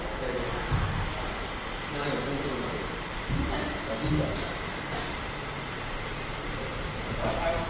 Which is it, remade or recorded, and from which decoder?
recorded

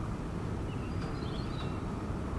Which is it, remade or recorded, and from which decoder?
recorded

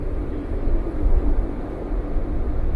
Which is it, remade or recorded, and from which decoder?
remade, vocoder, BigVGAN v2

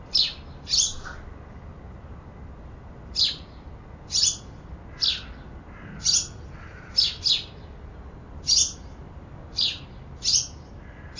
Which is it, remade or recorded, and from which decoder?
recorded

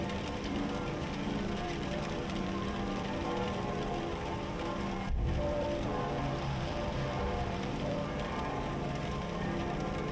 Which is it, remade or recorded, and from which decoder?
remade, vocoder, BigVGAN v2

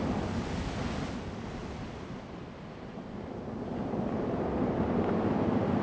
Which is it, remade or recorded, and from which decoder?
recorded